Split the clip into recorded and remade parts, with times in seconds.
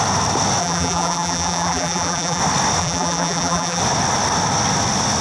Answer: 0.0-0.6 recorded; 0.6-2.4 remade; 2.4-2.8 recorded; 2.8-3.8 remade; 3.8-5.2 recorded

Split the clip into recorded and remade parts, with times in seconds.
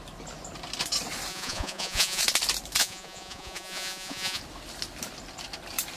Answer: 0.0-1.3 recorded; 1.3-2.2 remade; 2.2-2.8 recorded; 2.8-4.4 remade; 4.4-6.0 recorded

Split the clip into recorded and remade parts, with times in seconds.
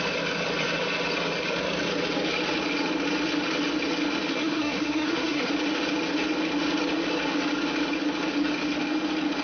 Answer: 0.0-4.3 recorded; 4.3-5.5 remade; 5.5-9.4 recorded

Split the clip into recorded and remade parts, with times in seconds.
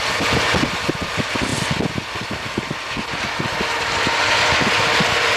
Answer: 0.0-5.4 recorded